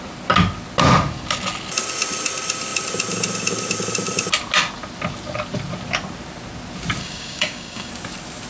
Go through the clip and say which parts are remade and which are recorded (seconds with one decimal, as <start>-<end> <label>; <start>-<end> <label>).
0.0-7.0 recorded; 7.0-7.9 remade; 7.9-8.5 recorded